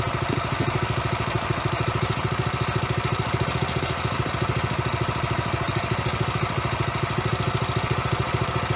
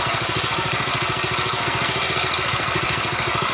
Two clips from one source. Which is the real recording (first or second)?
first